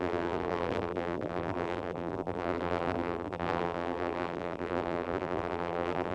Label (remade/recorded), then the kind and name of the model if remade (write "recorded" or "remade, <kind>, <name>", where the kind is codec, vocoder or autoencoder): remade, vocoder, BigVGAN v2